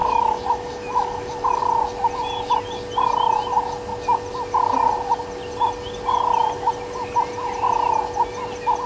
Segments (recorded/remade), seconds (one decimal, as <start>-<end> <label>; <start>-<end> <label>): 0.0-1.6 remade; 1.6-8.9 recorded